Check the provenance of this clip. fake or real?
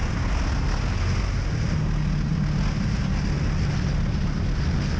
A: real